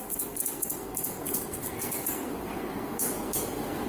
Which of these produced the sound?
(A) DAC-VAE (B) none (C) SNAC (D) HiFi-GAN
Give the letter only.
C